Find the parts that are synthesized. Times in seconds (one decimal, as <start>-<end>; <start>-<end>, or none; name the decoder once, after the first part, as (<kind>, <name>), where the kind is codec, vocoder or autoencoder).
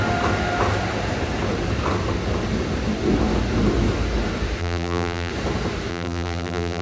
4.6-5.3 (vocoder, BigVGAN v2); 5.9-6.8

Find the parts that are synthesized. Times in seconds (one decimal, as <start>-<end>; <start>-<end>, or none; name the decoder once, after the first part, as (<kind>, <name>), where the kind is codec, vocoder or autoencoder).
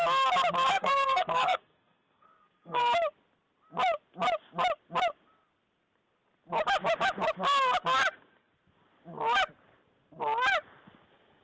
0.7-2.8 (codec, SNAC)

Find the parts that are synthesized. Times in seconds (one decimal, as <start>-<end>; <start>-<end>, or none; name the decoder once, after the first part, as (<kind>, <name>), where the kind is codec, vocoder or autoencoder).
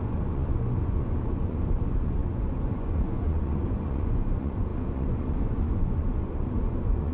0.0-7.1 (vocoder, Vocos)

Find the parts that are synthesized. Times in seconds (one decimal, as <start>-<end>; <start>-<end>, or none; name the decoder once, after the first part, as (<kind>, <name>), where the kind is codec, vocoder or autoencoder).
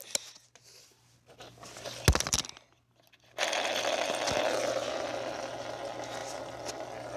none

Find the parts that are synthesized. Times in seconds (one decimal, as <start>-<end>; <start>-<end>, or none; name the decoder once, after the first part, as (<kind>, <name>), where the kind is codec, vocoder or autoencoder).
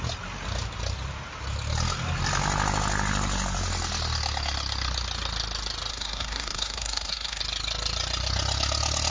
5.9-7.4 (codec, SNAC)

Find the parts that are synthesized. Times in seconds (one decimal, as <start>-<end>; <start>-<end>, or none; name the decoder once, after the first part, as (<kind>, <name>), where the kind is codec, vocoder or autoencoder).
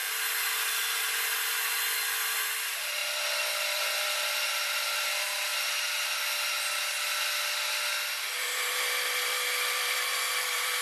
0.5-5.5 (vocoder, BigVGAN v2); 8.4-10.8